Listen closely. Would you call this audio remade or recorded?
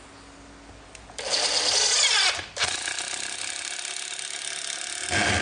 recorded